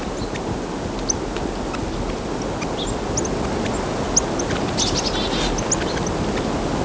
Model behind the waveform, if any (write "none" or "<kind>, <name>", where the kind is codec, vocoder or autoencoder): none